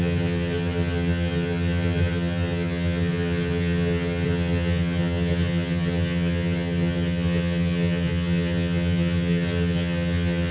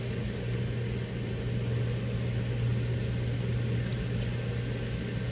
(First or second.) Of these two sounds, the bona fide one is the second